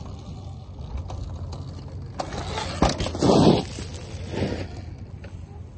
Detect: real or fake real